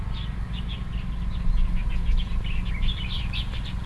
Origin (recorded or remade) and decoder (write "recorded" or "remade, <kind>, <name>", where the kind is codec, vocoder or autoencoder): recorded